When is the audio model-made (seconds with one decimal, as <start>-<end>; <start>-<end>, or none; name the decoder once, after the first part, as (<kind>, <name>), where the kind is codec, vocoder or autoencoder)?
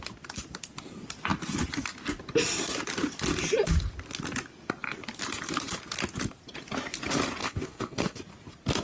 7.4-8.2 (codec, SNAC)